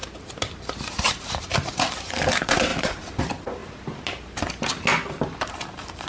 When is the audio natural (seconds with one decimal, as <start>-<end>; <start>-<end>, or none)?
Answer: 3.6-5.5